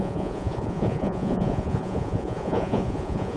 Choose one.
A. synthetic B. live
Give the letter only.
A